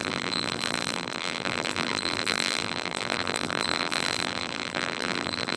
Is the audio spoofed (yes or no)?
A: yes